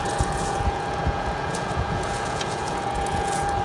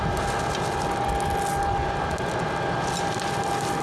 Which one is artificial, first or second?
first